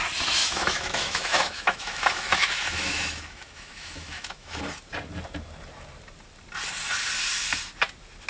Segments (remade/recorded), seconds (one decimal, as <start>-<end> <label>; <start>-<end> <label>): 0.0-0.4 recorded; 0.4-4.6 remade; 4.6-8.3 recorded